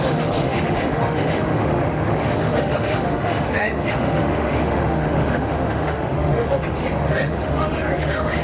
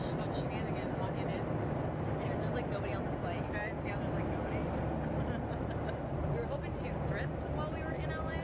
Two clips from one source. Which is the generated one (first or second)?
first